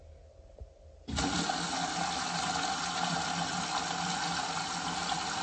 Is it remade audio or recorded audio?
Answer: recorded